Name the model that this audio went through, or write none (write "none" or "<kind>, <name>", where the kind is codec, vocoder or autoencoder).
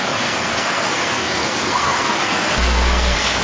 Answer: codec, SNAC